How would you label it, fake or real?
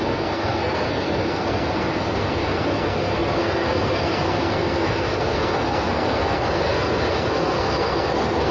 fake